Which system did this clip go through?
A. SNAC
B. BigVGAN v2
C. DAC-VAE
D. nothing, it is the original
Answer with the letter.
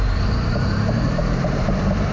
B